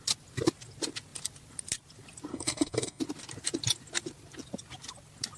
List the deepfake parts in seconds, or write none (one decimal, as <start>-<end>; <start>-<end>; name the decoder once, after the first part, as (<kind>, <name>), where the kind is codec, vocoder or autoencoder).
2.3-3.0 (codec, SNAC)